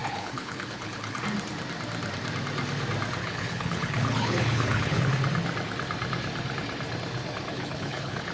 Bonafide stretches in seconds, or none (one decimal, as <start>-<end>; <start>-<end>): 1.2-3.2; 5.0-7.5